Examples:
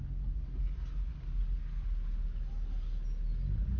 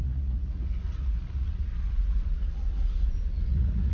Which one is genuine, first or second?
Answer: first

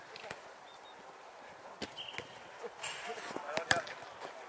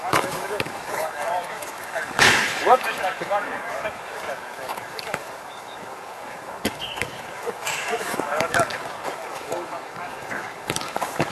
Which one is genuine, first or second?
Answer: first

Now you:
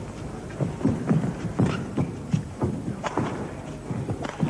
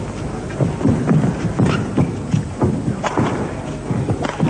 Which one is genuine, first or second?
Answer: second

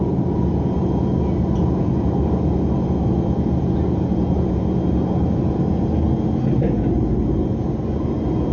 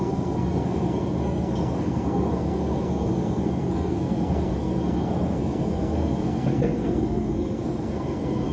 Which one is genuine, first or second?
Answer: first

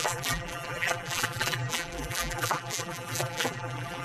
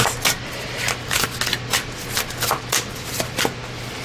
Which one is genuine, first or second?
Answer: second